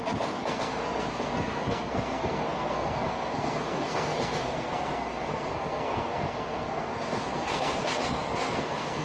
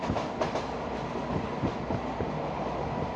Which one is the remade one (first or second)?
first